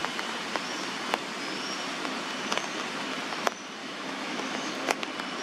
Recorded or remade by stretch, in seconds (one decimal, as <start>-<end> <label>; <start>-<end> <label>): 0.0-3.8 recorded; 3.8-4.7 remade; 4.7-5.4 recorded